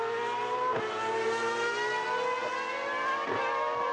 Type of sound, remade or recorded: recorded